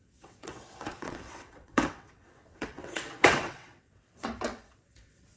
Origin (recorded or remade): remade